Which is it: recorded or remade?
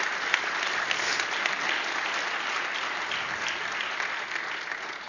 recorded